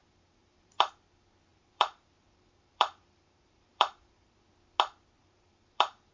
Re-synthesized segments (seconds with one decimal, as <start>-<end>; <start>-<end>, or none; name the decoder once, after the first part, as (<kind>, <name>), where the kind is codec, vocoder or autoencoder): 0.0-0.9 (vocoder, BigVGAN v2); 1.5-4.4; 5.2-6.1